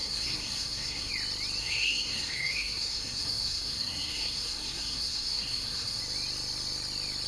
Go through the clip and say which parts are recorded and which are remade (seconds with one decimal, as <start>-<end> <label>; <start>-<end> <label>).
0.0-1.1 remade; 1.1-1.6 recorded; 1.6-6.0 remade; 6.0-7.3 recorded